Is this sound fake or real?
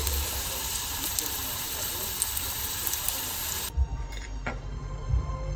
fake